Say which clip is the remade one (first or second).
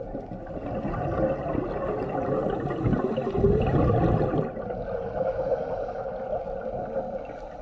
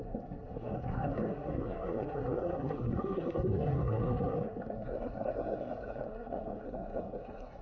second